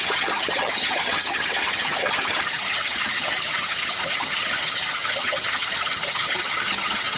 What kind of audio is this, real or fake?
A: fake